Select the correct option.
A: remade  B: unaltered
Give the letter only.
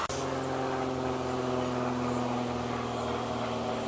B